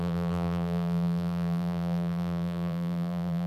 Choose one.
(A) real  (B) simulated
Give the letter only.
B